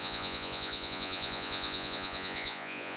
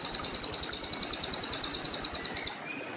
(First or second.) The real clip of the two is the second